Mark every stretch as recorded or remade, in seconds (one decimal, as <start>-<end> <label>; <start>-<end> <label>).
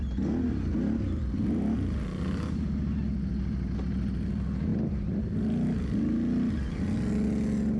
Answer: 0.0-7.8 recorded